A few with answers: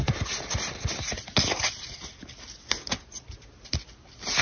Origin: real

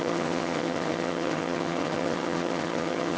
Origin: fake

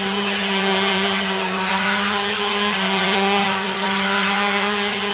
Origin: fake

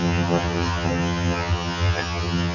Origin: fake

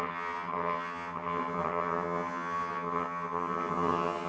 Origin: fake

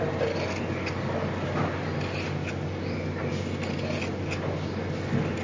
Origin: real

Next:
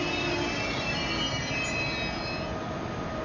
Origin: real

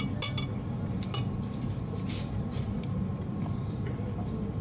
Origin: real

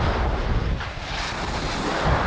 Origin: real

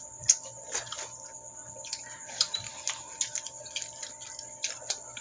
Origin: real